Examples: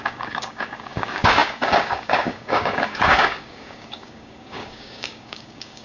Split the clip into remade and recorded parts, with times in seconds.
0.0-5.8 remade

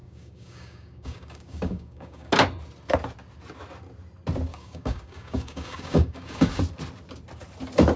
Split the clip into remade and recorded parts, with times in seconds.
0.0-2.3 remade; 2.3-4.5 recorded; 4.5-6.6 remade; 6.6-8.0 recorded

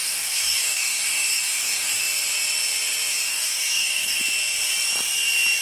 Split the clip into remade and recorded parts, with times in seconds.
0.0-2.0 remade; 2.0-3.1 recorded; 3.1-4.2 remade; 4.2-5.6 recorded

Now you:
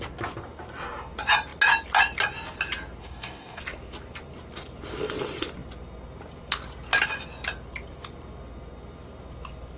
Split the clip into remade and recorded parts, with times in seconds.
0.0-3.0 recorded; 3.0-3.6 remade; 3.6-9.8 recorded

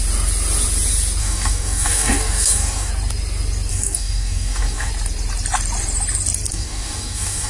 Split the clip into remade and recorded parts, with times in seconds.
0.0-1.2 recorded; 1.2-2.9 remade; 2.9-3.7 recorded; 3.7-4.9 remade; 4.9-6.5 recorded; 6.5-7.5 remade

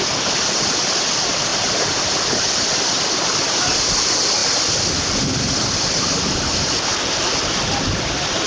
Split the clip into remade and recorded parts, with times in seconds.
0.0-8.5 recorded